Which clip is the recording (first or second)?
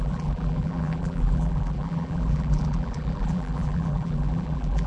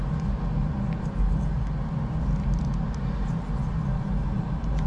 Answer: second